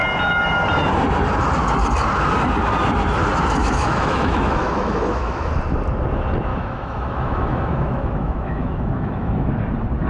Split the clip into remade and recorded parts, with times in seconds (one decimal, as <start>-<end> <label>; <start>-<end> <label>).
0.0-3.6 recorded; 3.6-5.5 remade; 5.5-6.5 recorded; 6.5-9.5 remade; 9.5-10.1 recorded